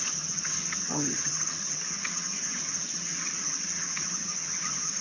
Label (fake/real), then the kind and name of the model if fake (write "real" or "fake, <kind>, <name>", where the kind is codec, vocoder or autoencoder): fake, vocoder, HiFi-GAN